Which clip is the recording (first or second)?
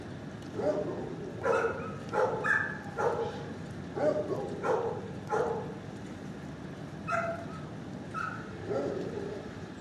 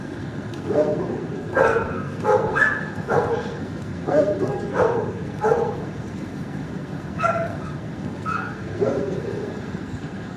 first